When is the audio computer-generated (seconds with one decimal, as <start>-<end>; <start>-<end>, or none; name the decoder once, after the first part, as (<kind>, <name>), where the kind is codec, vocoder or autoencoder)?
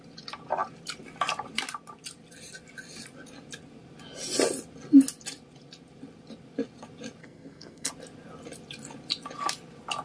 7.2-7.9 (codec, SNAC)